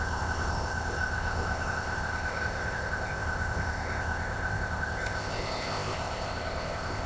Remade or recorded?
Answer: remade